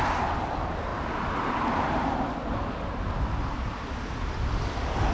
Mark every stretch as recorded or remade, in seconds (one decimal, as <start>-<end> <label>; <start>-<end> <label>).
0.0-5.1 recorded